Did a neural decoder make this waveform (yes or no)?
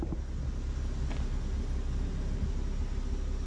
no